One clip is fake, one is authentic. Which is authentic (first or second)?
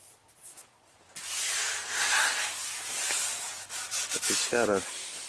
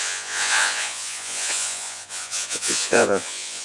first